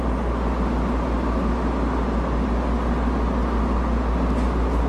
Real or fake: real